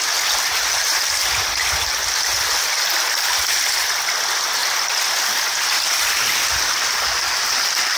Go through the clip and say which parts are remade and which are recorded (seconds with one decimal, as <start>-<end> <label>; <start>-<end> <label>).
0.0-8.0 recorded